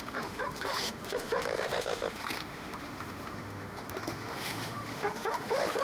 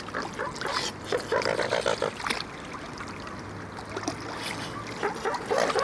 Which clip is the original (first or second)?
second